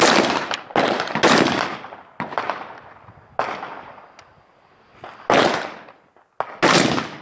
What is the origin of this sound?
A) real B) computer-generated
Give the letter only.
A